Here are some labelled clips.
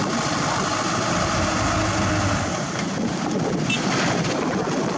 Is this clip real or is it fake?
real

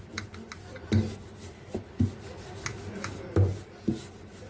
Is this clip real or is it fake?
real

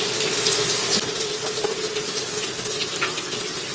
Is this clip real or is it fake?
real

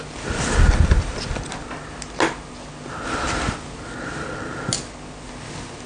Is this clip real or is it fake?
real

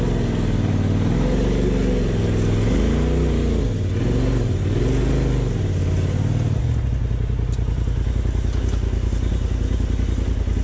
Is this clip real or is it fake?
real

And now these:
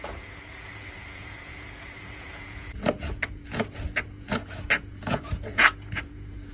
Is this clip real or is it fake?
fake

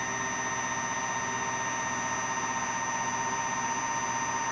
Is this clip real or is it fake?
real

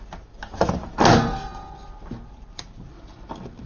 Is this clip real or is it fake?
real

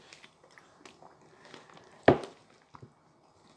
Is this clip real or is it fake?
real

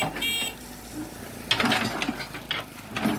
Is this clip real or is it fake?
real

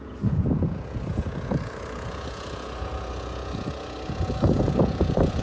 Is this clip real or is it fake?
fake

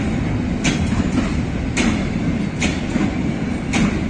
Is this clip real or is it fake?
real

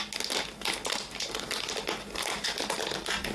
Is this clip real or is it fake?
real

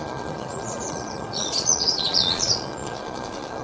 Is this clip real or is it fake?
fake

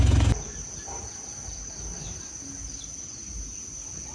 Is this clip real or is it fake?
real